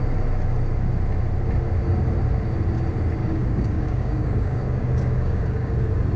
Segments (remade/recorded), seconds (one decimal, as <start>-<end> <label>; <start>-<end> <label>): 0.0-3.2 recorded; 3.2-5.7 remade; 5.7-6.2 recorded